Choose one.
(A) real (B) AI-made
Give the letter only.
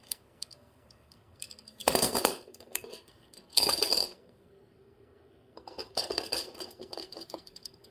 B